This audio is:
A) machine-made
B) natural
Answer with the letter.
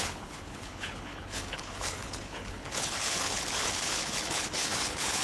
A